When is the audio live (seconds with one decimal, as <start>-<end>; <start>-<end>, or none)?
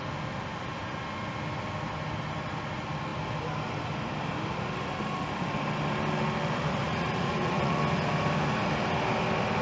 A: 0.0-6.8; 7.8-9.6